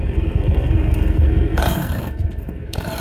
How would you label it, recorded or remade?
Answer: remade